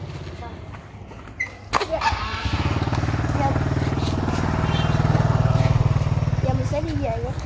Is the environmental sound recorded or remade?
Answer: recorded